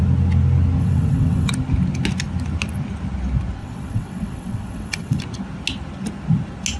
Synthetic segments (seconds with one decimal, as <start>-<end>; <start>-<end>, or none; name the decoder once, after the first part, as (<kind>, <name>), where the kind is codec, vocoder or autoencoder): 0.8-1.5 (vocoder, WaveNeXt); 3.6-5.2